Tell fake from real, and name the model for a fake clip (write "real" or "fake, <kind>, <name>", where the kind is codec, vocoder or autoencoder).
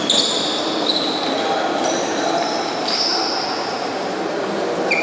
real